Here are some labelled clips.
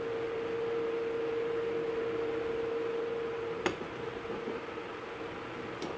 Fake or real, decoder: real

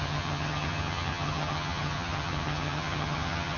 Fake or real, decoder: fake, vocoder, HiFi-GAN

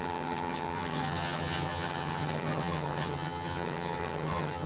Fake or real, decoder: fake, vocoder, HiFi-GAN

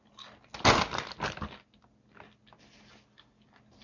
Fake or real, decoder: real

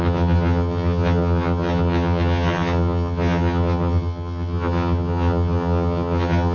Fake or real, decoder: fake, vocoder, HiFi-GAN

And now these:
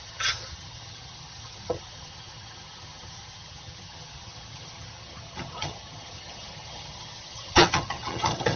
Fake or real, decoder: fake, vocoder, HiFi-GAN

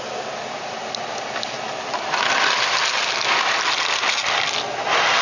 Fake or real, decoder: real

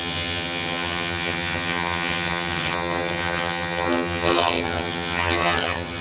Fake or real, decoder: fake, vocoder, HiFi-GAN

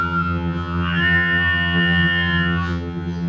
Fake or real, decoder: fake, vocoder, HiFi-GAN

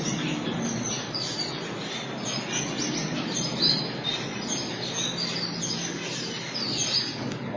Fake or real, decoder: real